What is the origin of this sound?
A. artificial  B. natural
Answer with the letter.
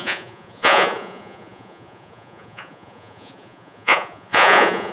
A